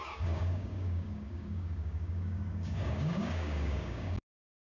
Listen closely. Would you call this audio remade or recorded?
remade